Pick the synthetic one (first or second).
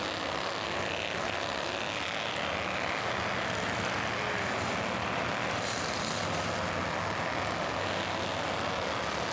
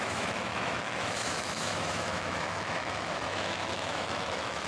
second